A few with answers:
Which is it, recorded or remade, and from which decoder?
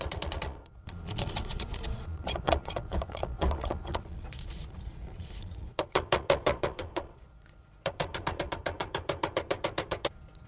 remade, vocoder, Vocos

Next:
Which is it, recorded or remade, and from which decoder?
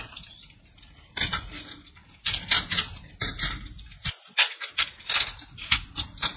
recorded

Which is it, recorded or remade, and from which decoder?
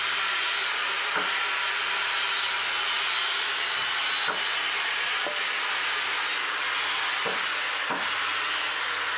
recorded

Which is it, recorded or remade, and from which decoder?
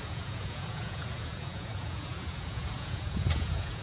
remade, vocoder, Vocos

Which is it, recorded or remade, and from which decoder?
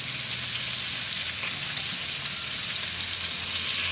recorded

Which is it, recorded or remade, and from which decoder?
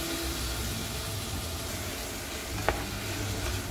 recorded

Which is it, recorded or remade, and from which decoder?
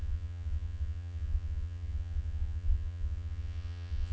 remade, vocoder, Vocos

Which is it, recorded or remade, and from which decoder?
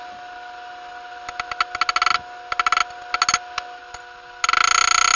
recorded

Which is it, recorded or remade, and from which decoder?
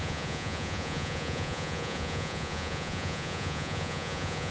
remade, vocoder, Vocos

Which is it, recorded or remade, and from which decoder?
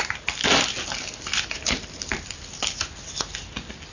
recorded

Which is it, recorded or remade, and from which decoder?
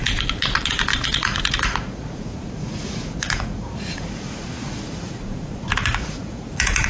remade, vocoder, Vocos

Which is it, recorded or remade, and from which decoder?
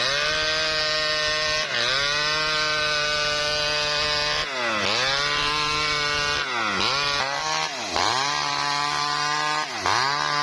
recorded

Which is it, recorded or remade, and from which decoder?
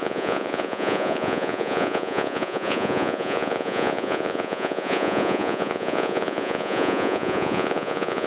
remade, vocoder, Vocos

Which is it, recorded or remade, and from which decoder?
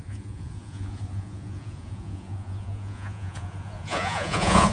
remade, vocoder, Vocos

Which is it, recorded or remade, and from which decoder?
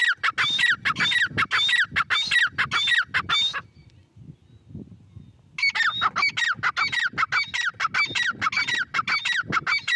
recorded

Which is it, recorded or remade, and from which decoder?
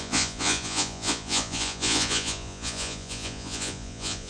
remade, vocoder, Vocos